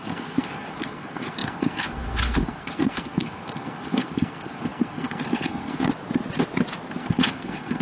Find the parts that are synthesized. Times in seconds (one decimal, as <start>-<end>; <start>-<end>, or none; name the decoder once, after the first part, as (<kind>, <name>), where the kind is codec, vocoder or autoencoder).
0.0-5.9 (codec, SNAC); 7.0-7.8

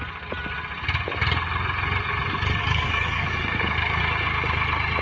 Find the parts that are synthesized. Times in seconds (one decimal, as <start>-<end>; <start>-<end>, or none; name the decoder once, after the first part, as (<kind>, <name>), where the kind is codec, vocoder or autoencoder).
2.6-4.0 (codec, DAC)

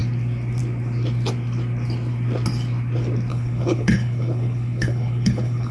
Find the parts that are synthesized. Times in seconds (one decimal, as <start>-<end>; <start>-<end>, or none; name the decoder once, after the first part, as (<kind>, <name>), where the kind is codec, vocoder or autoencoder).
3.3-5.7 (codec, HILCodec)

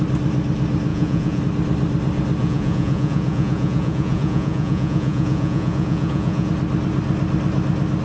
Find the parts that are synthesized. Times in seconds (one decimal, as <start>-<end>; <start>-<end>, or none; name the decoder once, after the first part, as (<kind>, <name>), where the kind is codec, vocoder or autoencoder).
0.9-1.4 (vocoder, Vocos); 2.4-6.5

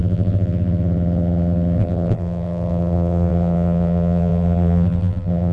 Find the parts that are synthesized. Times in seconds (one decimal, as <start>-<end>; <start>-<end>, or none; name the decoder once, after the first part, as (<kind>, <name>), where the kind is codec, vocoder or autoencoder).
0.0-5.5 (vocoder, BigVGAN v2)

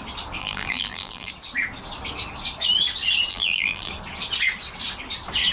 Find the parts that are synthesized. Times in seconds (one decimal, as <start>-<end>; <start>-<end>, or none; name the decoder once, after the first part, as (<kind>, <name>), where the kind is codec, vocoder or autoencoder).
0.4-1.3 (vocoder, BigVGAN v2); 3.3-3.9

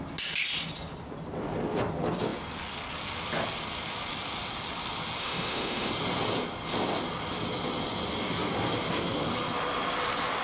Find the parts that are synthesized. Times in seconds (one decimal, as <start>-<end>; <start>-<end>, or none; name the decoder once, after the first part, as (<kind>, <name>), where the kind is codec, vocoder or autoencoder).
5.2-5.9 (autoencoder, DAC-VAE)

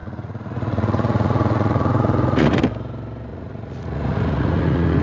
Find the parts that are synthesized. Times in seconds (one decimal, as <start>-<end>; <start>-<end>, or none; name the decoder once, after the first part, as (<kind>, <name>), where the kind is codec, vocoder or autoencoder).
0.0-2.6 (vocoder, Vocos); 3.3-5.0